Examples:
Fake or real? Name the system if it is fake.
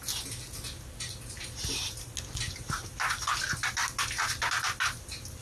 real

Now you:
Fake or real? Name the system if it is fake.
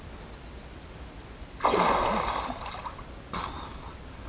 real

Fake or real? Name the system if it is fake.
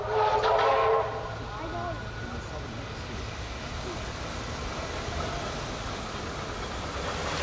real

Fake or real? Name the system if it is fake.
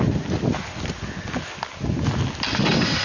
real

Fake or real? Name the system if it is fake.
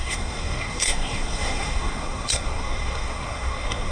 fake, codec, SNAC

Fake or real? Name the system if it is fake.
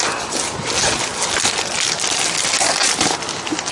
real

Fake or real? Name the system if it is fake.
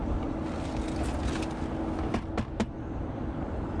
real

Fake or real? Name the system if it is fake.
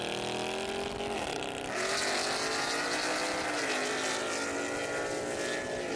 real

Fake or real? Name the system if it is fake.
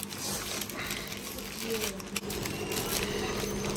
real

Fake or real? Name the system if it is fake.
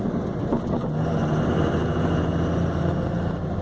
real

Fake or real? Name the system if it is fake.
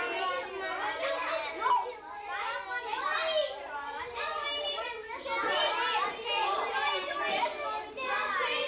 real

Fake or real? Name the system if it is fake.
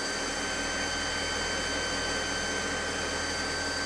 real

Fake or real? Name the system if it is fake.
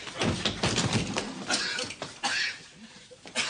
real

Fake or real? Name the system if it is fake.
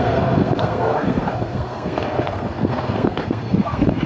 fake, codec, SNAC